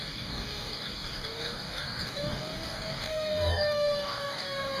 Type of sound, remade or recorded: remade